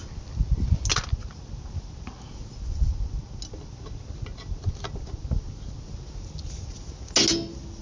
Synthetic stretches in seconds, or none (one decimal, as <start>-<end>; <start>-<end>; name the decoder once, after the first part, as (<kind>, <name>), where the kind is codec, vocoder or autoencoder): none